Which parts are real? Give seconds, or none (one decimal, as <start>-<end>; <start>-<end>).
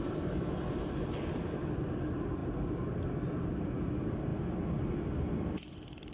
2.4-3.6; 4.3-5.4